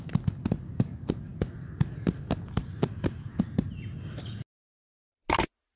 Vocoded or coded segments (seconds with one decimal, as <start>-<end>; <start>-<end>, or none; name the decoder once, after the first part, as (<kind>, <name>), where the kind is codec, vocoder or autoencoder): none